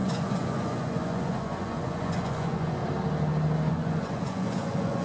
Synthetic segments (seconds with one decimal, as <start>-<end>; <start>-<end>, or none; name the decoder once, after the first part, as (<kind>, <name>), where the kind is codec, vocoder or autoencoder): 0.0-2.8 (vocoder, Vocos); 3.7-5.0